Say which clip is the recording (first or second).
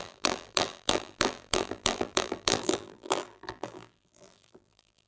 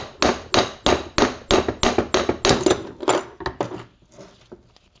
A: second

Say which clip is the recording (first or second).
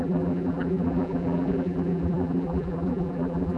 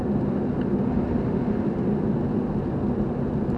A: second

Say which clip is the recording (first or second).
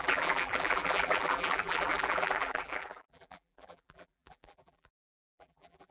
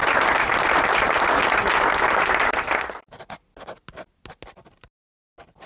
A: second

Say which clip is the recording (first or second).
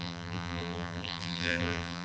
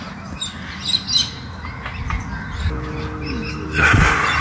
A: second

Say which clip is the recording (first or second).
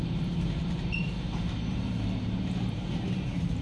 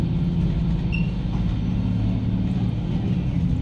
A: second